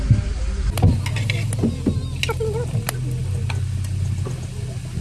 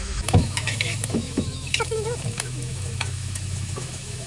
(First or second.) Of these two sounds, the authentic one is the first